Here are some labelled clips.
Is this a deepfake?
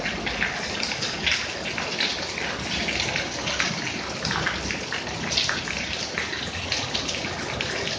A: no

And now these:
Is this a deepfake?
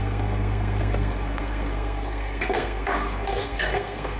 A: yes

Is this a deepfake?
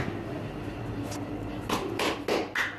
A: no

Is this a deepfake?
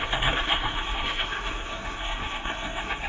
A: yes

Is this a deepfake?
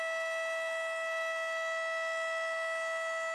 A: no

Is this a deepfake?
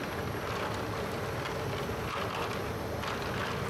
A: no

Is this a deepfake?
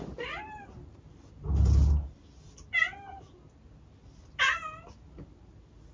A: no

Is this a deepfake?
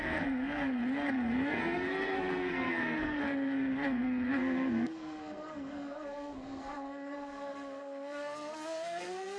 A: yes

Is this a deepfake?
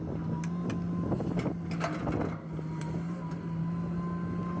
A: no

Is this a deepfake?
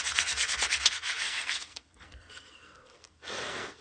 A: yes